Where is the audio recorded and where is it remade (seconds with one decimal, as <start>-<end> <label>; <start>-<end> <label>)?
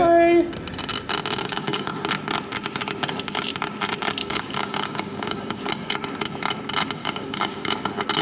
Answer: 0.0-1.4 recorded; 1.4-1.9 remade; 1.9-4.2 recorded; 4.2-5.7 remade; 5.7-7.0 recorded; 7.0-7.7 remade; 7.7-8.2 recorded